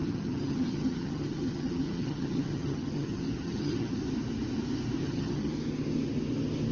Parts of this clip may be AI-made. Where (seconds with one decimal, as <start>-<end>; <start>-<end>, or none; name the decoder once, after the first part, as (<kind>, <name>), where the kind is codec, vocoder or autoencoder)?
0.0-4.0 (vocoder, HiFi-GAN); 5.0-5.5